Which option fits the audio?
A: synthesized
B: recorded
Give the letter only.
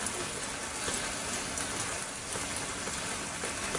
B